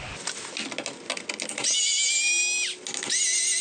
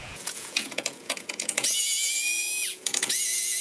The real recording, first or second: first